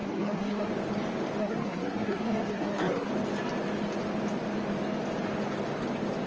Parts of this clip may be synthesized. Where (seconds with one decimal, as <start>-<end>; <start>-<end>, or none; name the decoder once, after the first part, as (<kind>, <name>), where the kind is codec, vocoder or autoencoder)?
0.0-0.7 (codec, SNAC); 1.4-3.1

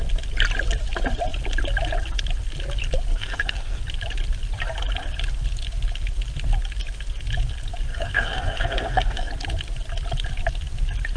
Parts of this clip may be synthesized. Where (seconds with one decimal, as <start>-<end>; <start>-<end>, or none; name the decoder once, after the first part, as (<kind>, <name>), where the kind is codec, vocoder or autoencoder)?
3.1-3.8 (codec, SNAC); 7.9-9.3

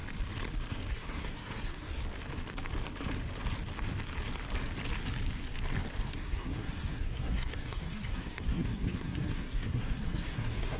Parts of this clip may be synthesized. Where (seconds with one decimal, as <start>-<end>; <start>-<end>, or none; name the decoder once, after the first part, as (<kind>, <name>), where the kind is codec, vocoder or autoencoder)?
0.9-2.0 (codec, SNAC); 6.1-10.8

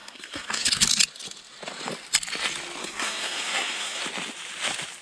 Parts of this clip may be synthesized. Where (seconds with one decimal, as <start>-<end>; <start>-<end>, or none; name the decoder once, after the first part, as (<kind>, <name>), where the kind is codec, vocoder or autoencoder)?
0.0-0.7 (codec, SNAC); 2.8-4.0

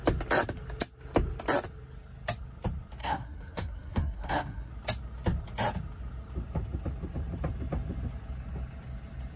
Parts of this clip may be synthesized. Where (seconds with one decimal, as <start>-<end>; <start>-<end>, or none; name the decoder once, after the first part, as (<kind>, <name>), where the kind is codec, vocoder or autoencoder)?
3.0-4.7 (codec, SNAC)